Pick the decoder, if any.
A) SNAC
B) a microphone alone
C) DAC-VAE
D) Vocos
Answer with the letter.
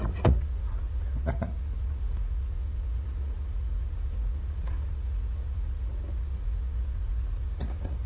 D